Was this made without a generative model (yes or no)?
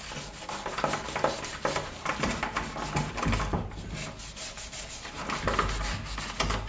yes